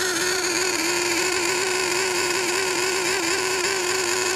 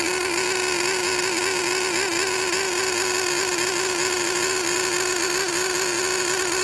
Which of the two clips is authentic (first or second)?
second